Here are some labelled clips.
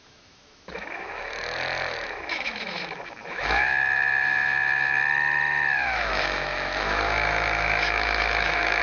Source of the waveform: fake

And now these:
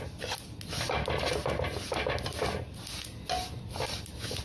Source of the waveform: real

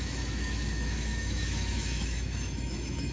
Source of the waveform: fake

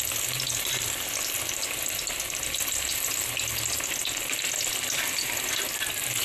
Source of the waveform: real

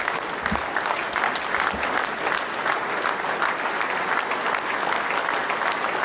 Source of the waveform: real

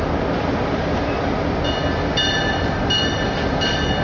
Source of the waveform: real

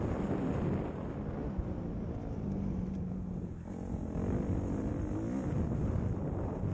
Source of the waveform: real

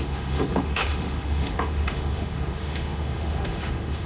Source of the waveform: fake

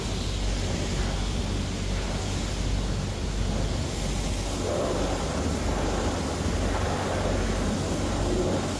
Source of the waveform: real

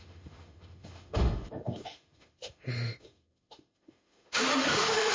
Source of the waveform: fake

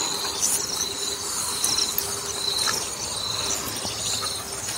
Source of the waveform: real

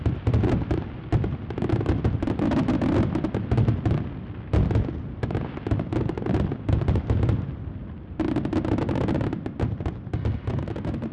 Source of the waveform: real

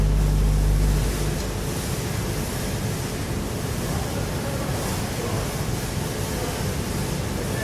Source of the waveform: real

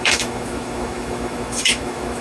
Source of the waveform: fake